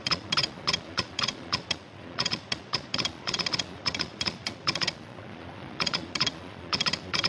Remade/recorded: remade